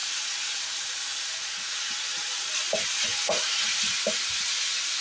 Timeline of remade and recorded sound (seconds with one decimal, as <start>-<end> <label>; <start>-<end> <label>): 0.0-2.5 remade; 2.5-3.1 recorded; 3.1-3.8 remade; 3.8-5.0 recorded